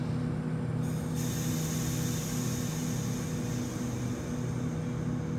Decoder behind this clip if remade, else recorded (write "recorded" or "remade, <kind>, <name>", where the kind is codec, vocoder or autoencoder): recorded